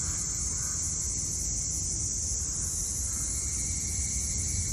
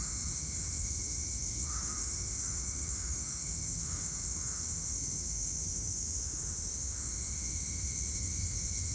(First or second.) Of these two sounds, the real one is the first